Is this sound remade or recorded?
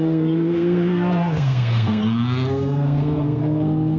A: remade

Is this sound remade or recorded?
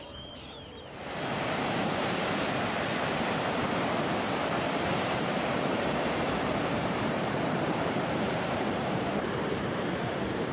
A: remade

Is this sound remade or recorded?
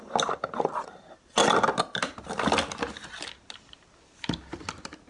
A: recorded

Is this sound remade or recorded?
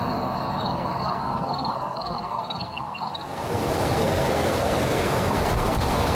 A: remade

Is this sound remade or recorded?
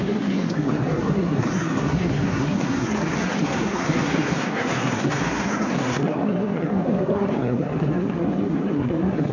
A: remade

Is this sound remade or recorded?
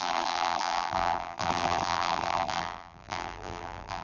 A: remade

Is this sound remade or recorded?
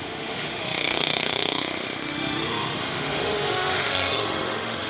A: remade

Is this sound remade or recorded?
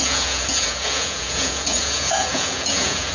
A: remade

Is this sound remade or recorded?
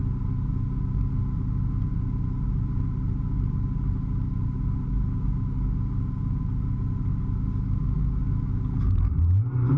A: recorded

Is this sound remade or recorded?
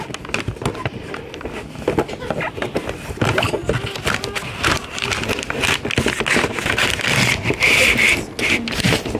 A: recorded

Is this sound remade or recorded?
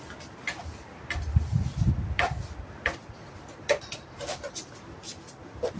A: recorded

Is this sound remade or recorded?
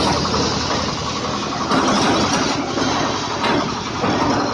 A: recorded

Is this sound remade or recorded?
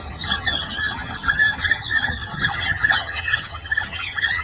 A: remade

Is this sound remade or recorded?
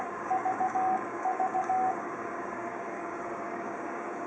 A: remade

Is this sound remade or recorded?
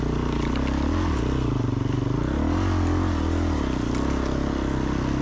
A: recorded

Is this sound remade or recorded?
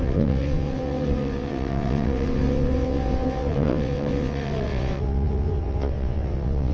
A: remade